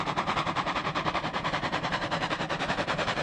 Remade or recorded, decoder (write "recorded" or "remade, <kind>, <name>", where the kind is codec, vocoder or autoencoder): remade, vocoder, BigVGAN v2